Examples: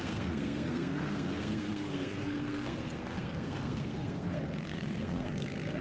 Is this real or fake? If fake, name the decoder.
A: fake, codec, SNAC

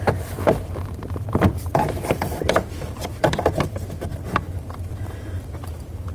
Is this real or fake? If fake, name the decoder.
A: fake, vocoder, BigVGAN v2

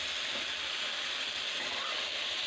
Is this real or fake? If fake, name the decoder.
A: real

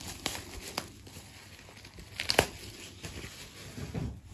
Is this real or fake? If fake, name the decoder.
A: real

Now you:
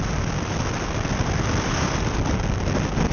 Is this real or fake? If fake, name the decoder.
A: real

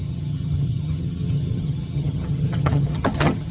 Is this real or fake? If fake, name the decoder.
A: fake, vocoder, HiFi-GAN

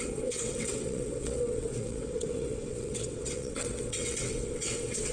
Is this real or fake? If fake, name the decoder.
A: fake, vocoder, WaveNeXt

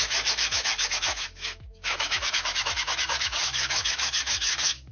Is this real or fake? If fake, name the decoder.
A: fake, autoencoder, DAC-VAE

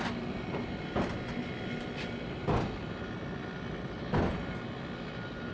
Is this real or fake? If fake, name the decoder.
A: real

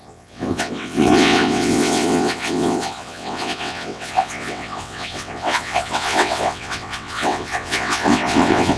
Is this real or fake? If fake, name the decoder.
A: fake, vocoder, WaveNeXt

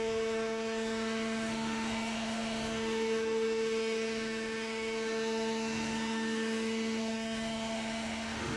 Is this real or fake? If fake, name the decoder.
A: fake, autoencoder, DAC-VAE